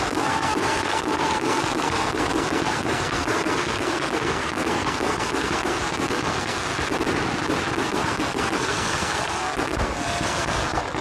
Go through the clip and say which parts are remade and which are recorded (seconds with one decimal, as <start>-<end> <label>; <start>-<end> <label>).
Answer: 0.0-6.7 remade; 6.7-7.8 recorded; 7.8-11.0 remade

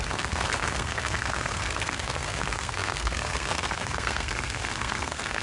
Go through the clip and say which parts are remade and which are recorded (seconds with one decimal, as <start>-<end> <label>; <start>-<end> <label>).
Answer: 0.0-5.4 remade

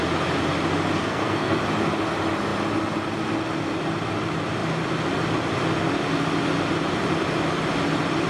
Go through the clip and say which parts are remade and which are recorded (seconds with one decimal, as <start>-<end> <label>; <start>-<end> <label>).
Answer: 0.0-1.0 recorded; 1.0-1.6 remade; 1.6-8.3 recorded

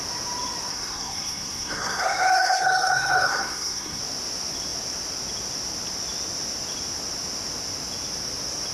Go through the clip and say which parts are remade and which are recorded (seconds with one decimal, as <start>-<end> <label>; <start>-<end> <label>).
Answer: 0.0-0.7 recorded; 0.7-4.0 remade; 4.0-8.7 recorded